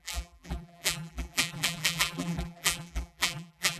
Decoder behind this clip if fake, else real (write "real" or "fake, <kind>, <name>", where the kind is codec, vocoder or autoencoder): fake, vocoder, BigVGAN v2